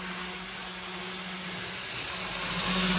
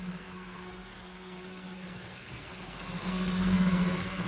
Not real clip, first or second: second